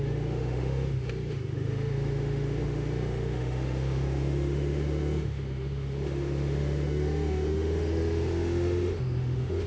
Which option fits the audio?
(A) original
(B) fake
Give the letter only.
B